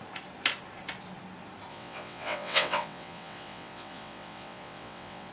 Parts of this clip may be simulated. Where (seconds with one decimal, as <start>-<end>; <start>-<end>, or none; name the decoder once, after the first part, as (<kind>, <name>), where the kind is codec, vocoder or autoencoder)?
1.7-5.3 (vocoder, WaveNeXt)